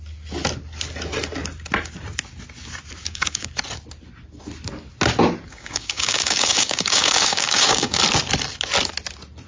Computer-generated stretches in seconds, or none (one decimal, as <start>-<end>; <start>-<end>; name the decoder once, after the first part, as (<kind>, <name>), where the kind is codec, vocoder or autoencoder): 3.0-3.5 (codec, DAC); 5.5-8.0